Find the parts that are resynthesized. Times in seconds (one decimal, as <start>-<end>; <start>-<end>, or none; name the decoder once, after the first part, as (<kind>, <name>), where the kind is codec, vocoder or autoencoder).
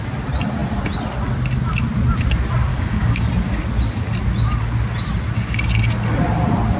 2.7-3.3 (codec, DAC)